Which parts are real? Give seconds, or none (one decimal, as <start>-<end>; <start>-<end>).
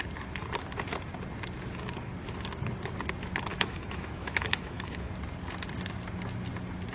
0.0-3.5; 5.1-6.9